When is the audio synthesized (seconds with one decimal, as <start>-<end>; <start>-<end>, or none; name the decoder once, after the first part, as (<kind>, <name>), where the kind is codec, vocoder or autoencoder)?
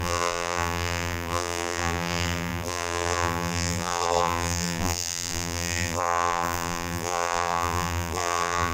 0.0-8.7 (vocoder, BigVGAN v2)